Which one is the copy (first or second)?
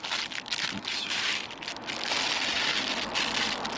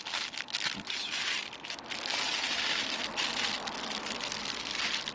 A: second